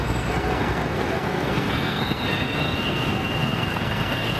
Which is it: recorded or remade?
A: remade